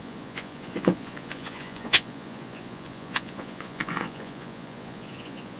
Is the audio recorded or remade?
remade